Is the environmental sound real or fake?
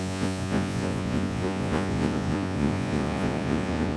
fake